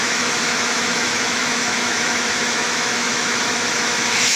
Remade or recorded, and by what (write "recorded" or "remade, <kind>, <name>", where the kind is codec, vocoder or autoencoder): remade, autoencoder, DAC-VAE